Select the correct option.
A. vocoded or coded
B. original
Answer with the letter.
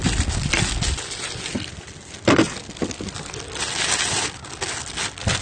B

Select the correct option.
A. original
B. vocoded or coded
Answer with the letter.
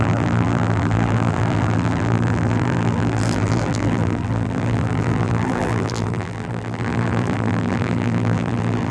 B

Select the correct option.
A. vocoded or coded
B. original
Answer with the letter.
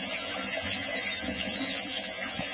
A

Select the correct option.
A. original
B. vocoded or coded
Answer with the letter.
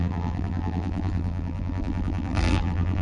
B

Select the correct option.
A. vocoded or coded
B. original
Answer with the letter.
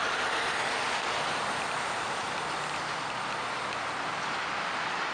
A